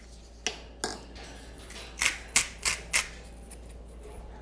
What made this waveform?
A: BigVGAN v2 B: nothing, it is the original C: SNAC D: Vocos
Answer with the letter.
B